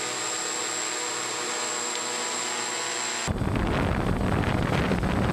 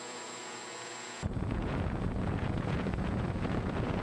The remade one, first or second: second